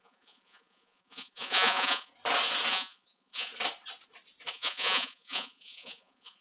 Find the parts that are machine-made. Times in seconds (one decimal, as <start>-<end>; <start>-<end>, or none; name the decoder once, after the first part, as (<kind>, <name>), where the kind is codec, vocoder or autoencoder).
0.0-2.1 (vocoder, Vocos); 2.7-3.5; 4.5-6.4